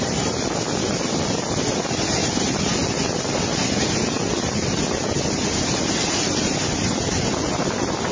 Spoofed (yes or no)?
no